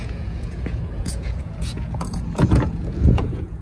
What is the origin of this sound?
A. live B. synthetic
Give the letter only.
B